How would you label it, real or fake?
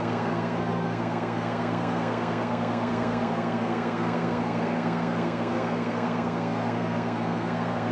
fake